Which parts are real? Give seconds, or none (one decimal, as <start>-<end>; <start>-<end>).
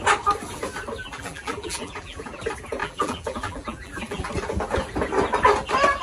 0.0-1.0; 2.4-2.8; 4.3-6.0